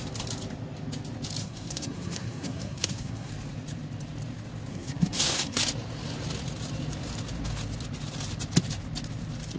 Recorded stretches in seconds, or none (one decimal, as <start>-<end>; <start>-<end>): 0.0-1.4; 3.3-4.7; 5.6-9.6

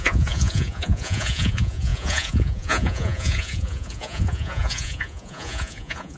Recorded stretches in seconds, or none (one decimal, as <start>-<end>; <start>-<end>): none

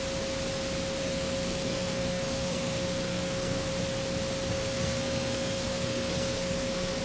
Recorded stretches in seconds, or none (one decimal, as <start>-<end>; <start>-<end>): 0.0-1.0; 3.7-4.5

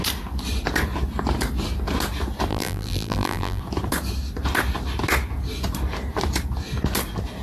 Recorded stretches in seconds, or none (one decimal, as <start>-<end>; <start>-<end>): 0.0-2.5; 3.6-7.4

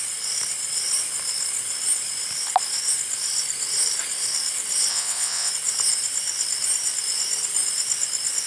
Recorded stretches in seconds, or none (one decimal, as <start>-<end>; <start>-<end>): 0.0-4.9; 5.5-8.5